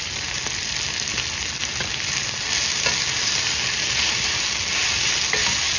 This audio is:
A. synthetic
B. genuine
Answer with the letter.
B